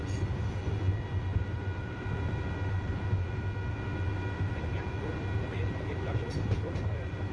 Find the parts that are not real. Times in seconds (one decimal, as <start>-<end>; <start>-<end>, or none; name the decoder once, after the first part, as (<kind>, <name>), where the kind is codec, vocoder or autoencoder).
none